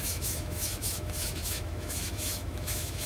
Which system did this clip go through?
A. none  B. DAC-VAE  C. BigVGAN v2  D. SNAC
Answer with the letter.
B